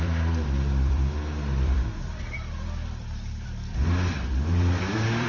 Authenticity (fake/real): fake